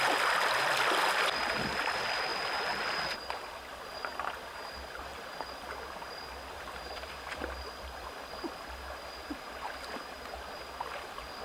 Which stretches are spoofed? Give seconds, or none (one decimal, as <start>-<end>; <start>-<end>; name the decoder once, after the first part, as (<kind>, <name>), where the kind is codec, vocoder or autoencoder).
none